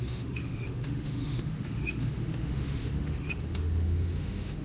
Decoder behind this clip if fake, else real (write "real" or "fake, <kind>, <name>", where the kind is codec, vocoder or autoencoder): fake, autoencoder, DAC-VAE